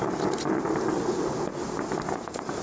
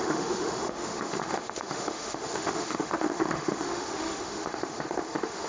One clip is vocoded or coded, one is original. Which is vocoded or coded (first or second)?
second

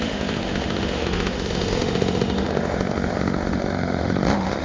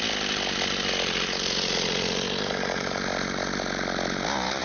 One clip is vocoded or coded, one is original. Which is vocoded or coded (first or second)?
first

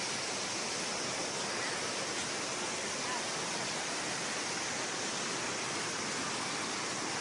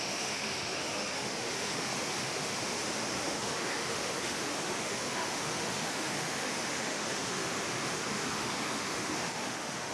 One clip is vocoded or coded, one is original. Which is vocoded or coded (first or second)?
second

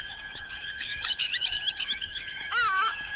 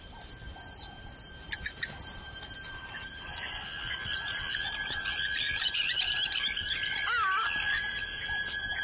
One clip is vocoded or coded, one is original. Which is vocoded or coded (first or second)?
first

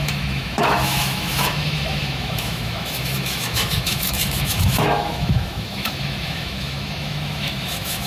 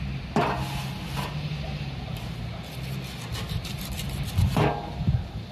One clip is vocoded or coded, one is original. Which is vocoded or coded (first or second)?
first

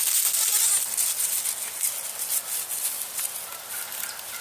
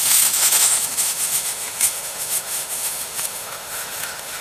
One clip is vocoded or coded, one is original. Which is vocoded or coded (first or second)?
second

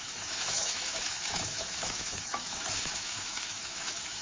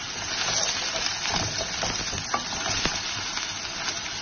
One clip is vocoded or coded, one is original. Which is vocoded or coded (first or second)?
first